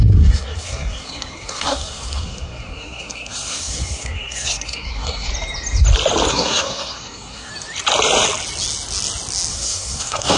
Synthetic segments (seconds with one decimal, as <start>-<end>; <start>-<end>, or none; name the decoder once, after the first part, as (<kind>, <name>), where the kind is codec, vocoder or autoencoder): 0.0-5.3 (codec, SNAC); 6.3-7.5; 9.5-10.4